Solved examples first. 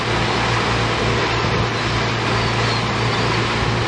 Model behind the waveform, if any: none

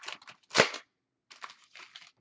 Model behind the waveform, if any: none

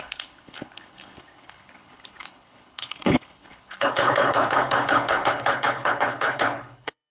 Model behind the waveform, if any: codec, HILCodec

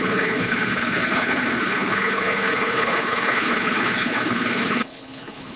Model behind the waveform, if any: codec, HILCodec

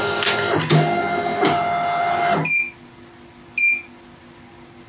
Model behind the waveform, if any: none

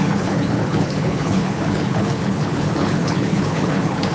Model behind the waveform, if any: codec, HILCodec